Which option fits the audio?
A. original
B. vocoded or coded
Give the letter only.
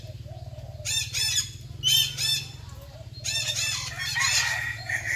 A